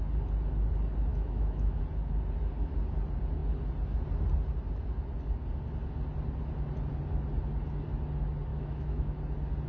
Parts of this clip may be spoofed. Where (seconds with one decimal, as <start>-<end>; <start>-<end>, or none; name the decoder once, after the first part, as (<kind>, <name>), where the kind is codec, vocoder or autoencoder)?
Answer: 1.1-1.8 (autoencoder, DAC-VAE); 8.5-9.2